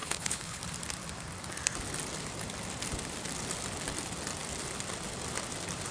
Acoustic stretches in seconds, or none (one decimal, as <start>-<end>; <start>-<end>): 0.6-5.9